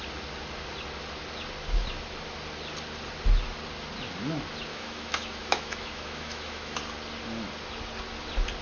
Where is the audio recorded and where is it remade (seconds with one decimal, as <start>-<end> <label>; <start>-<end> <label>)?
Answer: 0.0-4.7 recorded; 4.7-6.8 remade; 6.8-8.6 recorded